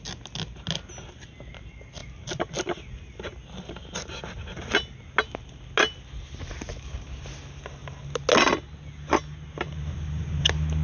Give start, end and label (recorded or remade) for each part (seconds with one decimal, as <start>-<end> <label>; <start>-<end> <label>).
0.0-10.8 recorded